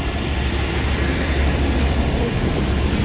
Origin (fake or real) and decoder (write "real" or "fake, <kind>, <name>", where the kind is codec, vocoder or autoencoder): fake, vocoder, BigVGAN v2